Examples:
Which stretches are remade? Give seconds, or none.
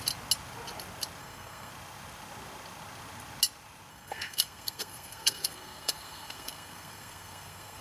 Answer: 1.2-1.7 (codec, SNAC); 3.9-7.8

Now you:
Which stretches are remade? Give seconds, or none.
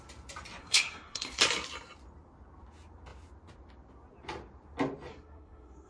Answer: 0.6-1.4 (codec, SNAC); 5.1-5.9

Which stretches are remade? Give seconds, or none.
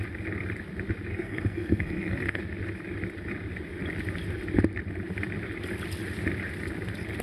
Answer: 1.1-2.4 (codec, SNAC)